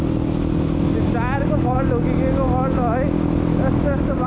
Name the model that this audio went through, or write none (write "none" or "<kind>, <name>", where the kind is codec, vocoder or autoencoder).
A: none